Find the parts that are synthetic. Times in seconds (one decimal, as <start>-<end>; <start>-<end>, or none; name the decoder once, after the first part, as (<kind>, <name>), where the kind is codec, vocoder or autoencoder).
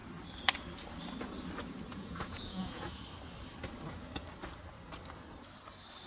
1.9-3.0 (vocoder, Vocos)